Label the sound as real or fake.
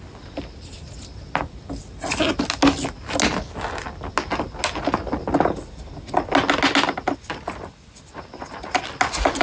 real